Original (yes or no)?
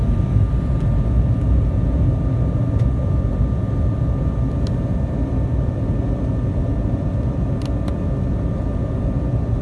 yes